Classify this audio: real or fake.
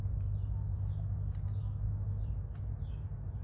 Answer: real